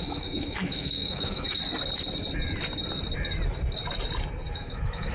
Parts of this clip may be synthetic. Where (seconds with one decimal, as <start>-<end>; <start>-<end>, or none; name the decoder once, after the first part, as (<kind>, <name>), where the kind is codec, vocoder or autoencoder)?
0.0-1.6 (autoencoder, DAC-VAE); 4.5-5.1

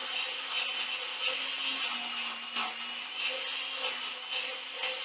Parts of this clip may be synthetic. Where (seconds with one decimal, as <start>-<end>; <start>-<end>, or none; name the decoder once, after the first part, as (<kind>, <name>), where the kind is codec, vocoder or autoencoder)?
none

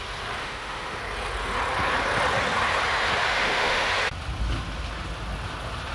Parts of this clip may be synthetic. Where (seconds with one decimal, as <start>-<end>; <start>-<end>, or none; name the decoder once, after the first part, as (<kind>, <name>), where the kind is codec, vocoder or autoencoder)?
0.4-1.0 (autoencoder, DAC-VAE); 3.3-3.9